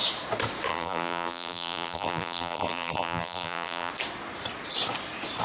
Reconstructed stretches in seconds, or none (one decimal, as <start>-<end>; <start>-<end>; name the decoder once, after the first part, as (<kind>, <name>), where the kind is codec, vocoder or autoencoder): 0.7-3.9 (vocoder, BigVGAN v2)